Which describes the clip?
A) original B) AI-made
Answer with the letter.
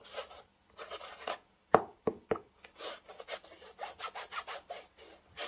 A